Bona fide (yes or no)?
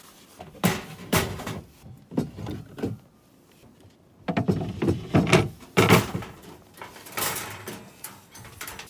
no